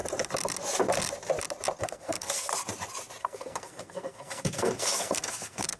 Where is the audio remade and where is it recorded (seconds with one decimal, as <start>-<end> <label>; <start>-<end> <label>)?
0.0-1.8 recorded; 1.8-2.5 remade; 2.5-3.2 recorded; 3.2-5.8 remade